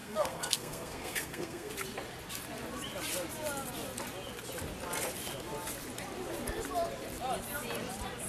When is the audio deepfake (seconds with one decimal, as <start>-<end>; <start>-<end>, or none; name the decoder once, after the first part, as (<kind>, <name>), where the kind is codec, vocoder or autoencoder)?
0.0-1.7 (codec, SNAC)